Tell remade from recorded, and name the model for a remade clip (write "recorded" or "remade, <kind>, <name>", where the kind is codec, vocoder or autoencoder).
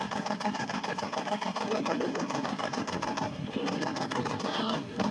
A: remade, codec, SNAC